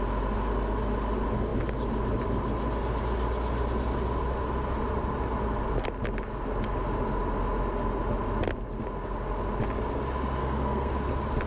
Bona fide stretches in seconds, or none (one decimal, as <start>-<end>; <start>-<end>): 0.0-10.4; 10.9-11.5